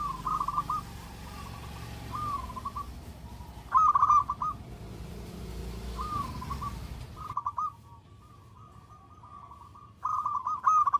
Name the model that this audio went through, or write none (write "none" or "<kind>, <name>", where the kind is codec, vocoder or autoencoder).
none